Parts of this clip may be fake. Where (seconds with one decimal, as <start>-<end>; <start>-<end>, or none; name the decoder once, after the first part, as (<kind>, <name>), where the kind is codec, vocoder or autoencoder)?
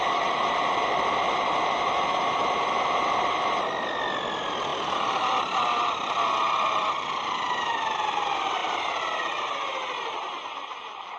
none